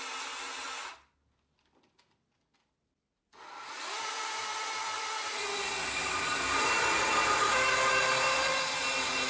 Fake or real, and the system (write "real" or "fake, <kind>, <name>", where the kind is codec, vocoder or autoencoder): real